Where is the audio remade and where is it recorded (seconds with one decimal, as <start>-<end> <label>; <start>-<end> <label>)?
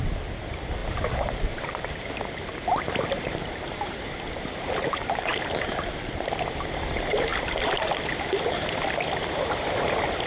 0.0-0.8 remade; 0.8-4.4 recorded; 4.4-7.3 remade; 7.3-8.7 recorded; 8.7-10.3 remade